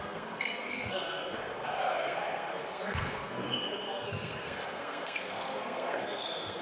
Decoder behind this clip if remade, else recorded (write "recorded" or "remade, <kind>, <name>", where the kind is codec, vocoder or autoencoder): remade, codec, SNAC